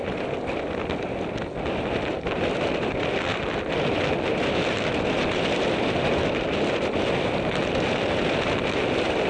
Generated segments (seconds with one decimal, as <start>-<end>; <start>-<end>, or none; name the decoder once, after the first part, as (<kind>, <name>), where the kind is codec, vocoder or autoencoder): none